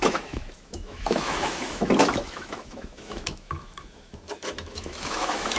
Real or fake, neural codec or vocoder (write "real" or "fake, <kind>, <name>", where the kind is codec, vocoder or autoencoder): fake, autoencoder, DAC-VAE